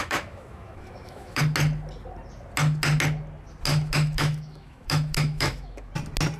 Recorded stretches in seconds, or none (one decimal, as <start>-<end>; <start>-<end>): 1.4-3.7; 5.9-6.4